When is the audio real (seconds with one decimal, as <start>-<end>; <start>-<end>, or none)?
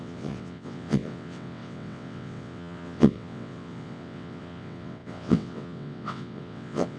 none